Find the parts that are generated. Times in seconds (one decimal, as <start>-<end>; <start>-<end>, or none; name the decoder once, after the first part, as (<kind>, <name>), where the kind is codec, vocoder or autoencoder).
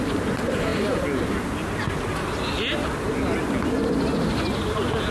none